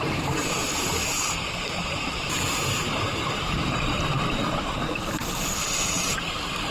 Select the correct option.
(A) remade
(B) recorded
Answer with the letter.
A